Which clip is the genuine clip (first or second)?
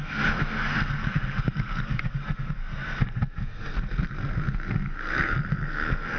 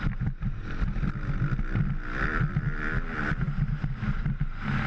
second